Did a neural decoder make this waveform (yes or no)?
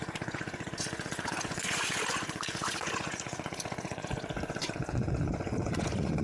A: yes